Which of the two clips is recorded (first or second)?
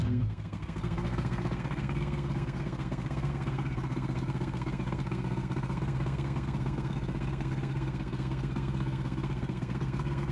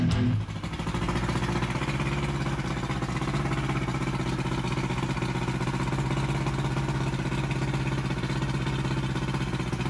second